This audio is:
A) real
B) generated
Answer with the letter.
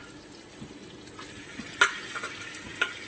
A